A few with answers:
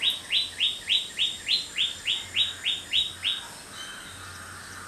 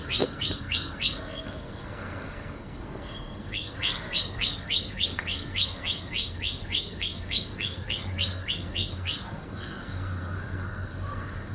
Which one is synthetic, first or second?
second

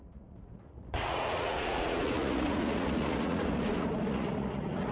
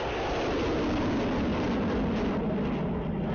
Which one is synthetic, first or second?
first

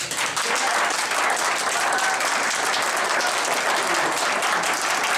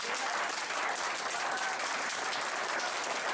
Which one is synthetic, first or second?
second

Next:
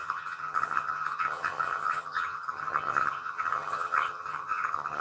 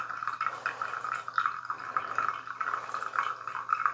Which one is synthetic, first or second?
first